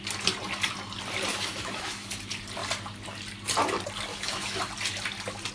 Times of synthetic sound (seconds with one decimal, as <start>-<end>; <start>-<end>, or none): 1.3-2.1; 4.1-4.6